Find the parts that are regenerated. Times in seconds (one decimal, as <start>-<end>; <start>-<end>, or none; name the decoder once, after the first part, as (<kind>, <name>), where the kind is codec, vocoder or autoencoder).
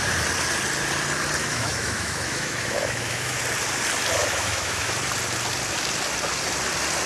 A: 1.4-3.4 (autoencoder, DAC-VAE); 4.2-4.9